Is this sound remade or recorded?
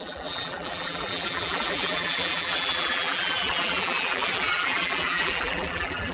remade